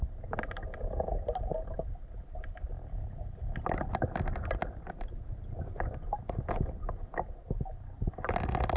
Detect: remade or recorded recorded